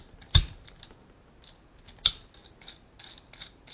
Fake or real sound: real